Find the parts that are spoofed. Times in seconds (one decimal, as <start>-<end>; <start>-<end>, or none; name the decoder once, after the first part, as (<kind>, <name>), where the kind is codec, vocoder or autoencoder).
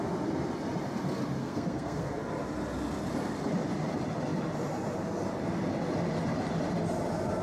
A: 1.4-2.1 (codec, SNAC)